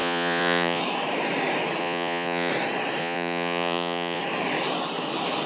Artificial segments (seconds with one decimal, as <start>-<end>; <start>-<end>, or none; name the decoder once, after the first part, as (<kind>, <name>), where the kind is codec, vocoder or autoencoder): 0.0-0.8 (vocoder, Vocos); 1.8-2.5; 3.0-4.2